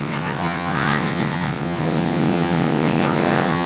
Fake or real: fake